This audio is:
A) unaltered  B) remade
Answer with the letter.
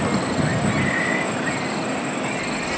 A